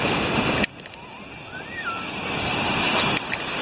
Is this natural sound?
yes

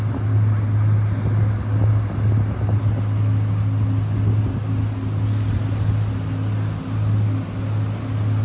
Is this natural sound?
yes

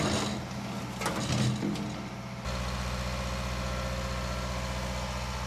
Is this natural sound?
yes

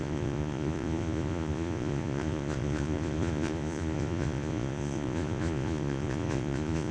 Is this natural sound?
no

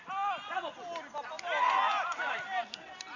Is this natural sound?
yes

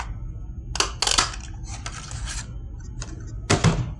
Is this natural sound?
yes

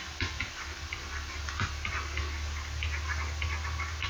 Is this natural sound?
yes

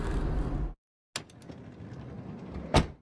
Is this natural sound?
yes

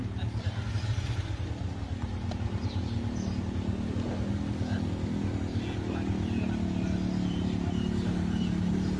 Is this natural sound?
yes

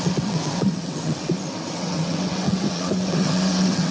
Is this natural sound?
no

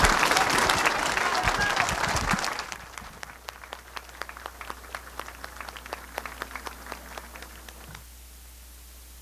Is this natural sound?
yes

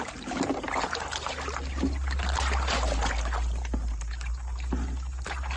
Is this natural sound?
yes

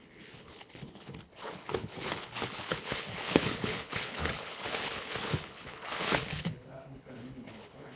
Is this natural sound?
no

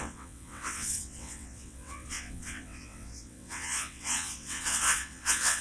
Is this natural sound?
no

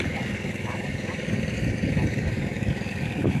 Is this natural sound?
no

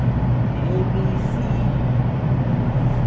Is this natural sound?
yes